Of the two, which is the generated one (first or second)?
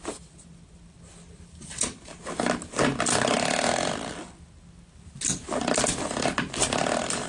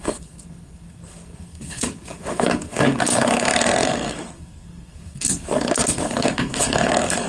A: second